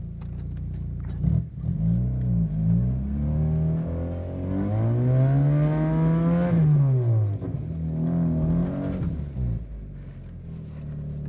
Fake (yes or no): no